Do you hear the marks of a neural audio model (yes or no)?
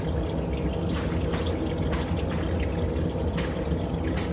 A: no